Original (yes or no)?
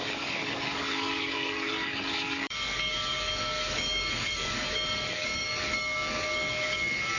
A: no